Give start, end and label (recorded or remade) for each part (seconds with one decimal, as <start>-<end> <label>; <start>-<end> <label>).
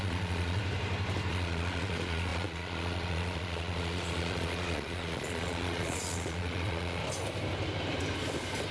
0.0-0.6 remade; 0.6-1.3 recorded; 1.3-7.0 remade; 7.0-8.7 recorded